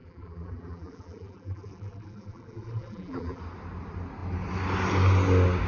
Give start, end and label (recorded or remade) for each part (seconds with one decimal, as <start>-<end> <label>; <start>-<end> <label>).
0.0-3.4 remade; 3.4-5.7 recorded